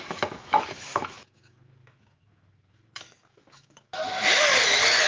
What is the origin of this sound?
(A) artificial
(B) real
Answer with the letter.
A